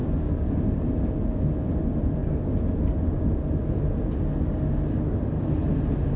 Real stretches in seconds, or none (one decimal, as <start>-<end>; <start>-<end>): 0.0-6.2

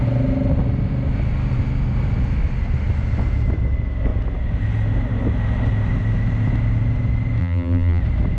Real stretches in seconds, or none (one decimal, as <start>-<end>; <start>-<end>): 0.0-7.4; 8.0-8.4

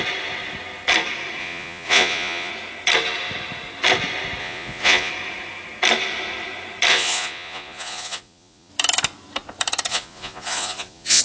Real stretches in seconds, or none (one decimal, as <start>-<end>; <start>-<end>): 0.0-1.4; 2.5-4.4; 5.1-6.9; 8.7-9.9

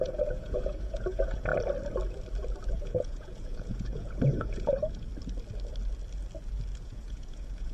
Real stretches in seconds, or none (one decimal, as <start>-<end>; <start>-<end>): 1.5-2.7; 5.1-6.8

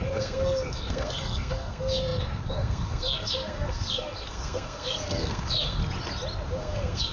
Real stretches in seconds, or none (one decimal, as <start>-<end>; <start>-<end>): 5.8-6.6

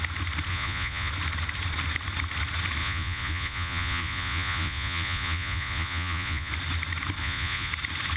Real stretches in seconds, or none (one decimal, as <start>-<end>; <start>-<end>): 0.0-0.5; 1.1-2.8; 6.5-7.2; 7.7-8.2

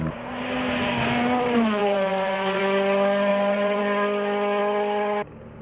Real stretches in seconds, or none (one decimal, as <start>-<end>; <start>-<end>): 0.0-1.8; 2.6-3.3; 3.8-5.6